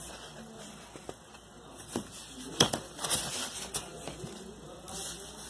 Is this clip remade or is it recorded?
recorded